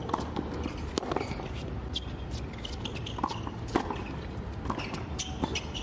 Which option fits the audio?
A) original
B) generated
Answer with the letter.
A